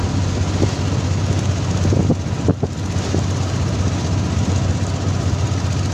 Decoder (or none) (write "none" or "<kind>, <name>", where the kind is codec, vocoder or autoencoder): none